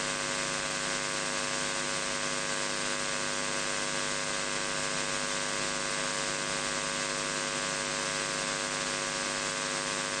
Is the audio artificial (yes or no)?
no